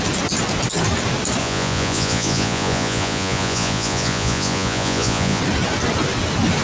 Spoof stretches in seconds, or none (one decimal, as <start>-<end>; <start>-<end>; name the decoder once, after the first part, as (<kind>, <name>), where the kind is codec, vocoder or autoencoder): 1.4-5.4 (vocoder, Vocos)